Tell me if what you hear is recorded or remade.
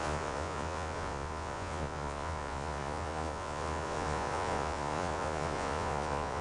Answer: remade